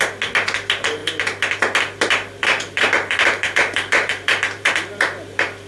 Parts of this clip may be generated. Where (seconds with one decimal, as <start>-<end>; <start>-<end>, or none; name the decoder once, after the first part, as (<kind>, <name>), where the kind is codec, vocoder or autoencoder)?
2.4-4.7 (vocoder, BigVGAN v2)